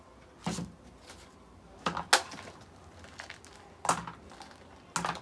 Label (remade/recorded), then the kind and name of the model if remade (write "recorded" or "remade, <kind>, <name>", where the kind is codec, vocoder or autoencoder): recorded